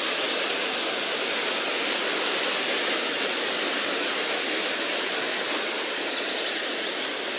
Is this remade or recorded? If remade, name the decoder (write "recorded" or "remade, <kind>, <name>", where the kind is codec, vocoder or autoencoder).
recorded